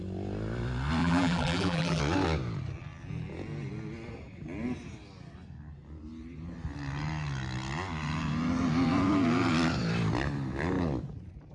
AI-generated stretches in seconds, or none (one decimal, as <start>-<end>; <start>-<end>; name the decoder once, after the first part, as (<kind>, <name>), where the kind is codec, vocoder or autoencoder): 1.0-2.0 (vocoder, BigVGAN v2)